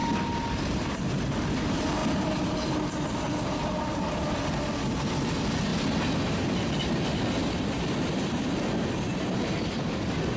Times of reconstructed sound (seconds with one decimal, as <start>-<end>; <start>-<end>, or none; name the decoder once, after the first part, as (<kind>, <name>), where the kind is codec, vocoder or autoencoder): 0.0-1.1 (vocoder, BigVGAN v2)